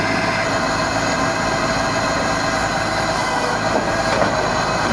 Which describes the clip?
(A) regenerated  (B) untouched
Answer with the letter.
B